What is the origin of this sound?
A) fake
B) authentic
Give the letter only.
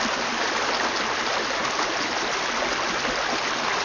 B